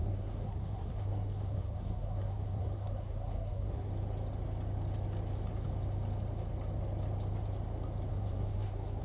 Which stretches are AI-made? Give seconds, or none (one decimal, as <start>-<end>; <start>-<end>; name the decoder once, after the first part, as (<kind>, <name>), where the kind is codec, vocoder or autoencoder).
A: 0.0-3.9 (codec, SNAC); 8.1-9.0